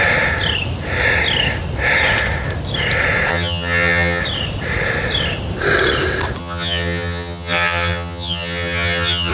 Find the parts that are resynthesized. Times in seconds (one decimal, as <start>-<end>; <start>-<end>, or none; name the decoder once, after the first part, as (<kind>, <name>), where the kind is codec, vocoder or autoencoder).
3.3-4.2 (vocoder, HiFi-GAN); 6.4-9.3